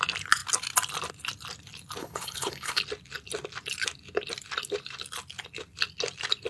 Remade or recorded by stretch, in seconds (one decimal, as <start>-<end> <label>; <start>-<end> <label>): 0.0-2.0 recorded; 2.0-2.8 remade; 2.8-6.5 recorded